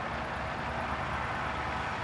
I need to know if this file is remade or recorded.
recorded